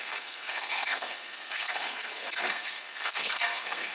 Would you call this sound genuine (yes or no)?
no